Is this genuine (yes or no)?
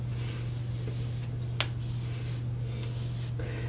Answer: yes